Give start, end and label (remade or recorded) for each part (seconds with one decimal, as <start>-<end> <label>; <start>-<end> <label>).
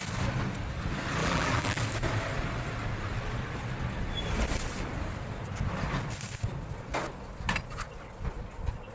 0.0-1.2 recorded; 1.2-1.8 remade; 1.8-8.9 recorded